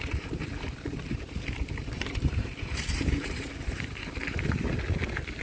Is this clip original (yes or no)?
no